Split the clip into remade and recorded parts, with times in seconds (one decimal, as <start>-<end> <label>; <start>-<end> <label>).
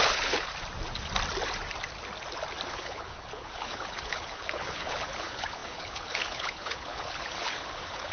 0.0-0.5 remade; 0.5-2.7 recorded; 2.7-8.1 remade